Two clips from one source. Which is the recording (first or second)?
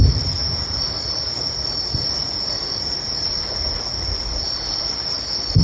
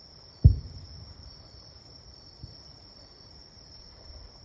first